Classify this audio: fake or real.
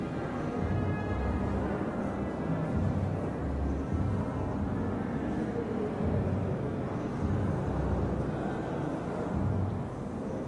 real